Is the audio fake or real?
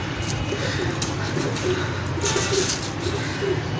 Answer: real